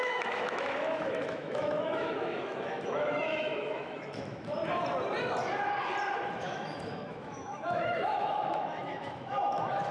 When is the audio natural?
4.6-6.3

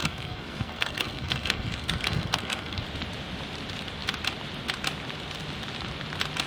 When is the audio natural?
2.8-6.5

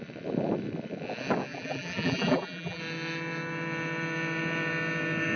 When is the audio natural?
0.0-1.5; 2.8-5.4

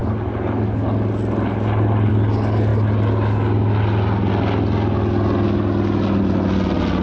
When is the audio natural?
0.0-7.0

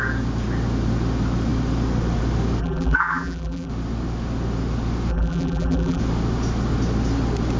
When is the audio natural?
0.0-2.6; 3.7-5.1; 6.0-7.6

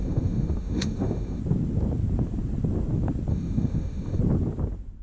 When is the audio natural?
1.4-3.3; 4.2-5.0

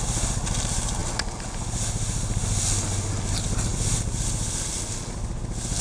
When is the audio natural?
0.0-3.7; 4.2-5.8